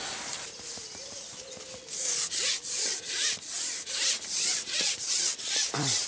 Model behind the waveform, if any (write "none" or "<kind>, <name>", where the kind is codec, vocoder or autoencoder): none